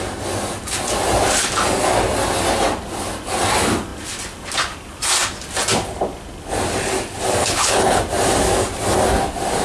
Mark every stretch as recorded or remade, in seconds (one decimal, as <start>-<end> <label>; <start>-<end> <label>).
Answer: 0.0-7.4 recorded; 7.4-8.0 remade; 8.0-9.6 recorded